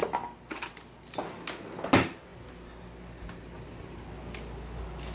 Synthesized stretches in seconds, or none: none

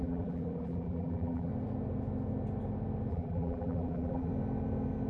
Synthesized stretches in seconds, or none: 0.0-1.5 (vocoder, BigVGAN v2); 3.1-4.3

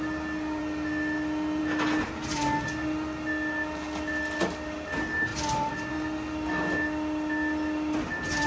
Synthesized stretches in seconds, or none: none

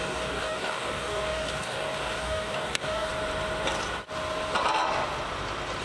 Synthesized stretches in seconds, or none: 0.0-3.1 (codec, DAC)

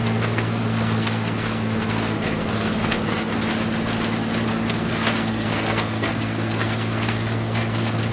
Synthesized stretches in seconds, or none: 0.0-3.3 (codec, SNAC); 4.5-8.1